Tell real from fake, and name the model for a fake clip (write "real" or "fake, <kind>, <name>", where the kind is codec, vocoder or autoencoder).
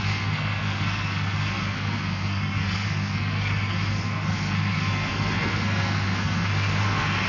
fake, codec, SNAC